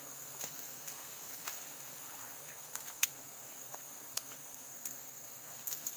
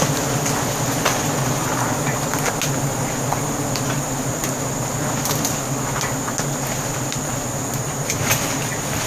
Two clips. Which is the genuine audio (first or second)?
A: second